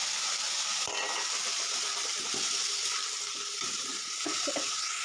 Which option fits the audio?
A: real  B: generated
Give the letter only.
A